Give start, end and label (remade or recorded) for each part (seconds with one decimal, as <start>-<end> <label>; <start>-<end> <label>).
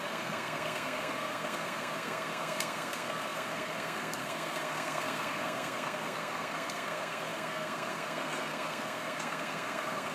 0.0-10.1 remade